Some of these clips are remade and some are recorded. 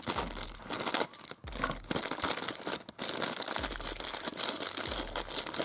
recorded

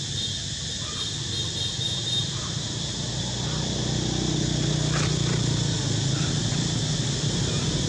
recorded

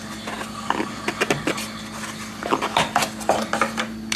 recorded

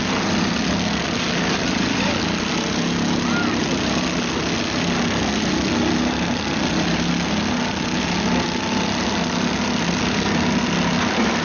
recorded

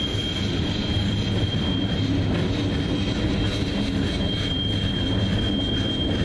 recorded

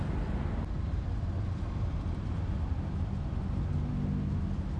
recorded